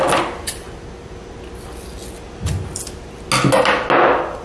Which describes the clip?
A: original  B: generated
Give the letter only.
A